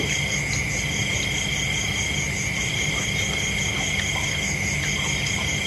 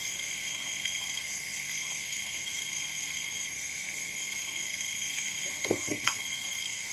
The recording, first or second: first